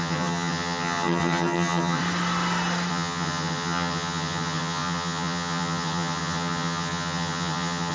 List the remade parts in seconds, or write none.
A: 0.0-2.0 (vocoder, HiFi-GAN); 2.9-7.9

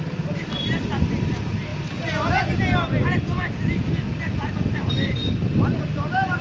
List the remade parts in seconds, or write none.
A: none

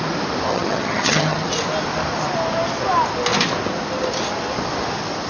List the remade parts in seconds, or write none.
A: 0.5-1.5 (vocoder, HiFi-GAN)

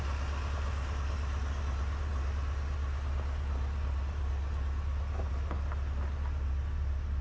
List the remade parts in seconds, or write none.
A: none

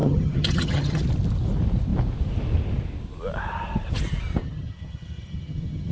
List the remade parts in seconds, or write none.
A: 0.0-1.0 (vocoder, HiFi-GAN); 4.4-5.9